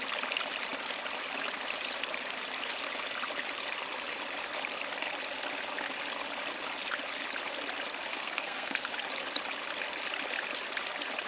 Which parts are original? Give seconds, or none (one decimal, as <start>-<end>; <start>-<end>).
0.0-8.1; 8.9-11.3